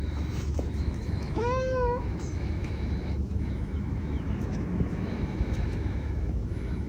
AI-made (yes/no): yes